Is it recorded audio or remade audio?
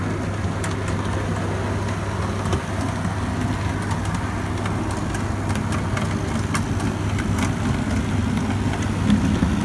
recorded